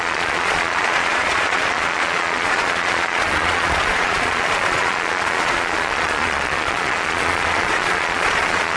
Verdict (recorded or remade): remade